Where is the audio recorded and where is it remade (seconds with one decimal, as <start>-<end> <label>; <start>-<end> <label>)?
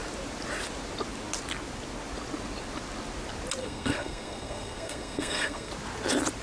0.0-3.6 recorded; 3.6-5.7 remade; 5.7-6.4 recorded